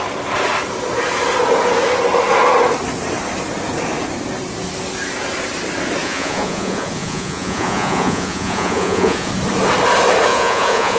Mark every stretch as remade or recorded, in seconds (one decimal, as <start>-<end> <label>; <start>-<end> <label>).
0.0-6.0 recorded; 6.0-9.3 remade; 9.3-10.3 recorded; 10.3-11.0 remade